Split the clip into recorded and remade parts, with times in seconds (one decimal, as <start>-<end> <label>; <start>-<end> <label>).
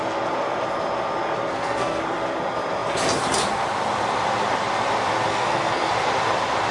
0.0-1.5 recorded; 1.5-2.0 remade; 2.0-5.3 recorded; 5.3-5.9 remade; 5.9-6.7 recorded